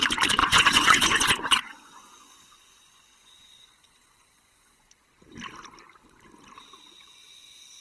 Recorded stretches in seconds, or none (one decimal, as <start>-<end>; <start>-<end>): 0.0-0.4; 5.1-7.8